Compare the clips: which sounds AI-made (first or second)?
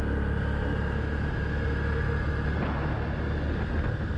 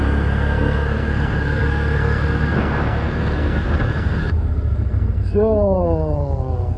second